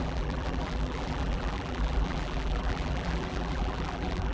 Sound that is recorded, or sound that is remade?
remade